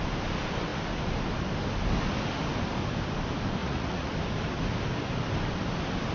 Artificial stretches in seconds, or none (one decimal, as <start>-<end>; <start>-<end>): 3.6-4.1